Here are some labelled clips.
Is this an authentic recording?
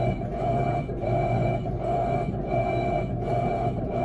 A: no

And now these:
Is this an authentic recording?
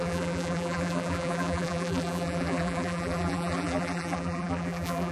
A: no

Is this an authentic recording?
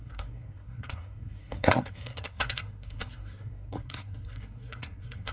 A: no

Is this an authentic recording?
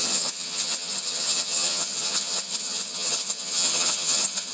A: no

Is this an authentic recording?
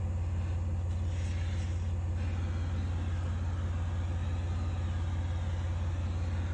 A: yes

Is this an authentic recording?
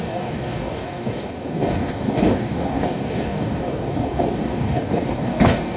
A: no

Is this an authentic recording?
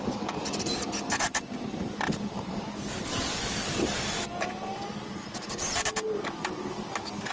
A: yes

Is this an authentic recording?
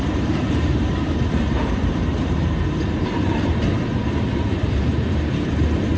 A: no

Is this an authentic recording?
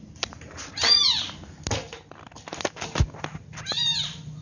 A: yes